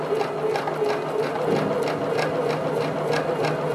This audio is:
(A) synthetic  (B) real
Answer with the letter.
B